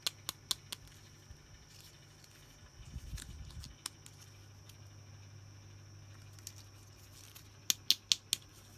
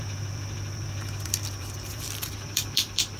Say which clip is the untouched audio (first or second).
first